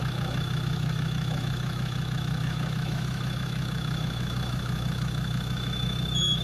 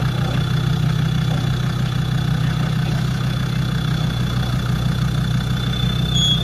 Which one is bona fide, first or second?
second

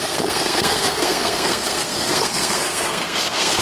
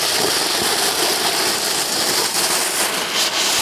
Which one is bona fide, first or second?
second